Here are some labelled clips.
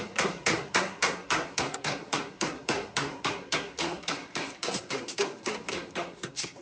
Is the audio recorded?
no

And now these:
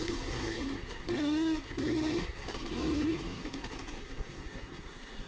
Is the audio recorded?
no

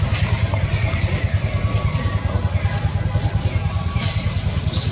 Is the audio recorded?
yes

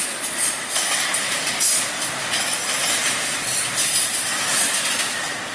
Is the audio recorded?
yes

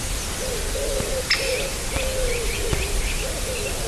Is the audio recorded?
yes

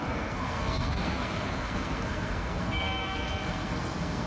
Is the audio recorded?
no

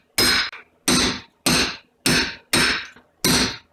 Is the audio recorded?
yes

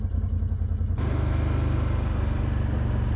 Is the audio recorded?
yes